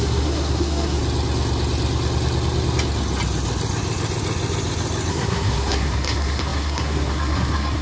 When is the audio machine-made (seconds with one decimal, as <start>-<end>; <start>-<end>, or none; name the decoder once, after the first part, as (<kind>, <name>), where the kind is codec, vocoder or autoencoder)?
0.0-1.0 (codec, SNAC); 5.1-7.8